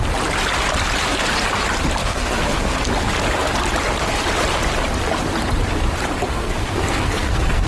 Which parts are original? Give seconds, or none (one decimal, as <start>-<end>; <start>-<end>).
0.0-2.0; 2.8-6.3